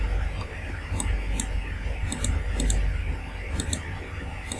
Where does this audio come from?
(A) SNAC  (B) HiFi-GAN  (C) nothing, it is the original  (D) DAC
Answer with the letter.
C